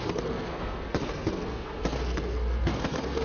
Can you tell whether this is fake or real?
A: fake